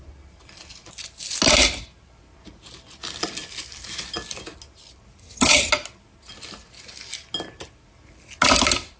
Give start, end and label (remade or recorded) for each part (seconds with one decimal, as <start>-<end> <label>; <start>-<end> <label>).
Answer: 0.0-5.2 recorded; 5.2-5.7 remade; 5.7-9.0 recorded